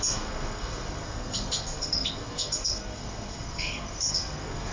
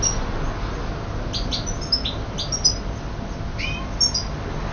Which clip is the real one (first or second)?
second